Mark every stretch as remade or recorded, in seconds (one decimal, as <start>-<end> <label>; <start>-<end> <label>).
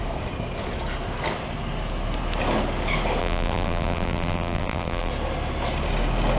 0.0-3.2 recorded; 3.2-5.1 remade; 5.1-6.4 recorded